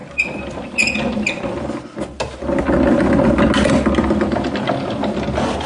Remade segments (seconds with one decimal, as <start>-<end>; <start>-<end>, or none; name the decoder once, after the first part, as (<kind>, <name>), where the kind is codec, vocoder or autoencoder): none